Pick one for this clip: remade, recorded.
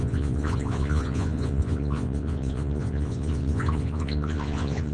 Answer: remade